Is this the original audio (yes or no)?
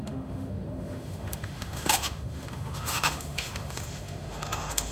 no